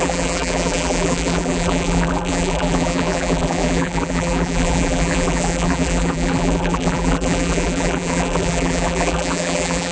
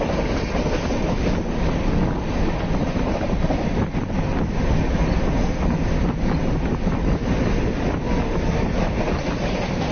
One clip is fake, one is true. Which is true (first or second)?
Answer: second